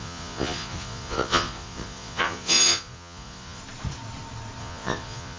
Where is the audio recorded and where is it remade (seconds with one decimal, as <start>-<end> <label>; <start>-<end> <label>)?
0.0-3.6 remade; 3.6-4.6 recorded; 4.6-5.4 remade